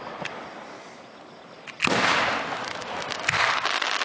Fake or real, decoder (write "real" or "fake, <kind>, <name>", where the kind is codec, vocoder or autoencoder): real